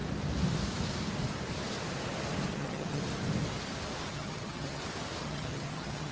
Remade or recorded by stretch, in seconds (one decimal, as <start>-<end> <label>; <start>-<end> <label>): 0.0-2.5 recorded; 2.5-3.0 remade; 3.0-4.1 recorded; 4.1-4.8 remade; 4.8-5.2 recorded; 5.2-6.1 remade